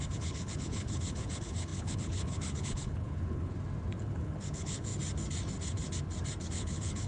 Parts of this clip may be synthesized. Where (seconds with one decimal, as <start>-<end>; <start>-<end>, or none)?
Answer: 0.0-3.5; 4.0-4.9; 6.4-7.1